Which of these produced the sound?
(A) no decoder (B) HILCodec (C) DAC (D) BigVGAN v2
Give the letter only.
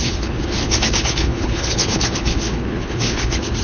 B